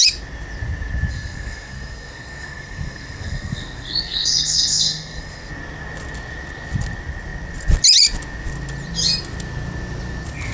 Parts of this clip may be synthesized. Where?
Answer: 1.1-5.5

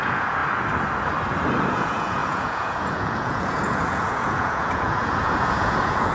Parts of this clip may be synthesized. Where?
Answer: 0.0-0.4; 1.7-6.1

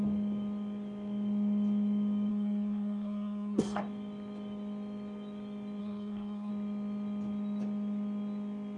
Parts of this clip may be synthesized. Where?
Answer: 2.3-3.8; 5.8-6.5

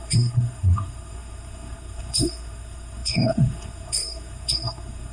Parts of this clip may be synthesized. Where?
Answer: 0.0-5.1

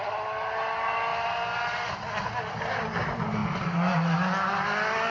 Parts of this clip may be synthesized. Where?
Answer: 1.1-1.6

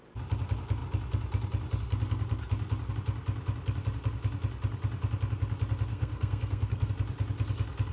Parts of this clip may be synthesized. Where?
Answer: 5.9-6.9

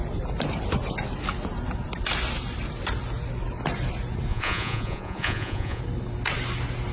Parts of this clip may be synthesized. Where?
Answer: 4.3-5.8

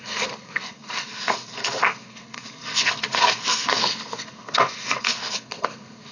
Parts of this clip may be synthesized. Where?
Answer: 0.0-6.1